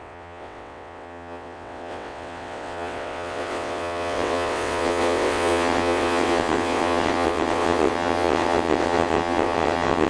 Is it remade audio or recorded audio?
remade